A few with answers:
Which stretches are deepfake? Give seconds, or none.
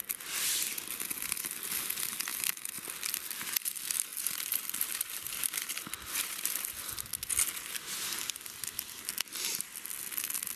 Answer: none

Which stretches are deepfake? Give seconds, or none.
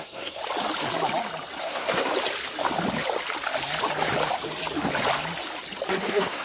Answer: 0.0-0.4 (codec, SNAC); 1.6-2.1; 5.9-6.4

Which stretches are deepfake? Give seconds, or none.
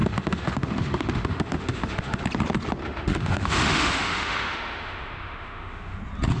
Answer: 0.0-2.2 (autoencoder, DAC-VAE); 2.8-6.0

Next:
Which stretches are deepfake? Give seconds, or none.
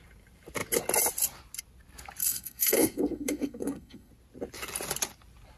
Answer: 2.2-4.1 (codec, SNAC)